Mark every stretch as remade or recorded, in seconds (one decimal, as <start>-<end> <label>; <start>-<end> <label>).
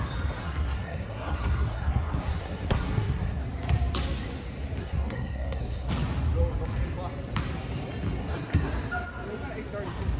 0.0-0.4 recorded; 0.4-3.4 remade; 3.4-4.8 recorded; 4.8-5.9 remade; 5.9-8.2 recorded; 8.2-8.7 remade; 8.7-10.2 recorded